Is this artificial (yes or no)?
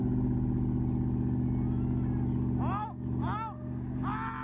no